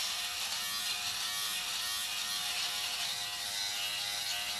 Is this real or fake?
real